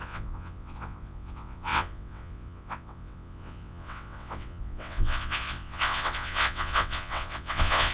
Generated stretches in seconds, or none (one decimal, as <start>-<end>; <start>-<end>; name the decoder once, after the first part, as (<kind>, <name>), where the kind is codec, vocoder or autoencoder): 0.0-7.9 (vocoder, WaveNeXt)